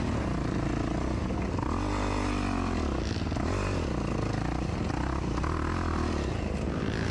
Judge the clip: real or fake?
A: real